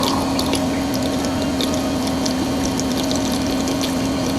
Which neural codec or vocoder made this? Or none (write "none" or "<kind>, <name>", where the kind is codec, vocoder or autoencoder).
none